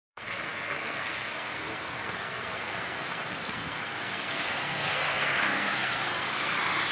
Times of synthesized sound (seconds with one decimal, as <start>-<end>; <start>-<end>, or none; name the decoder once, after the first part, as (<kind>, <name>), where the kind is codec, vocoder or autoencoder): 0.0-6.9 (codec, SNAC)